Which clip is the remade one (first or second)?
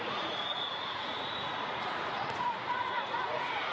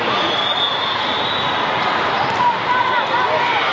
first